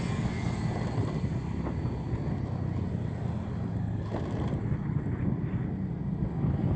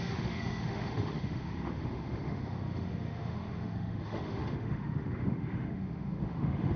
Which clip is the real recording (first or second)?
first